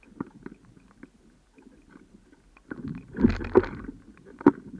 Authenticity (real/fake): real